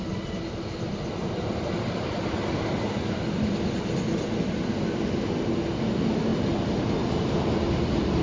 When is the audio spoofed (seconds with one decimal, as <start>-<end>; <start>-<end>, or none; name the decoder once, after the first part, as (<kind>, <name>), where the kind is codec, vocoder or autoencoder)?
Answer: none